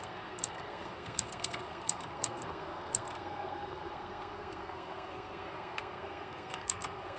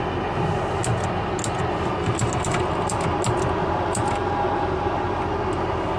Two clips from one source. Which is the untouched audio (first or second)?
second